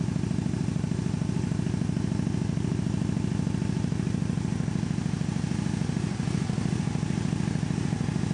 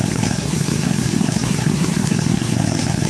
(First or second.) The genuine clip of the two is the first